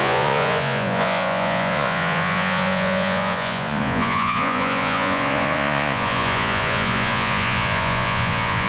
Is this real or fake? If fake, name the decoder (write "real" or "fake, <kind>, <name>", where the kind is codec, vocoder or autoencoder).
fake, vocoder, Vocos